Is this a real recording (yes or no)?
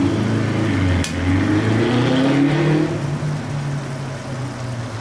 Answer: yes